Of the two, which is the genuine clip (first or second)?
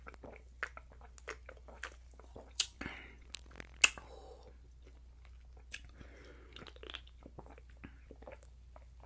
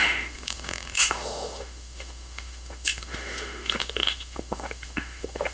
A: first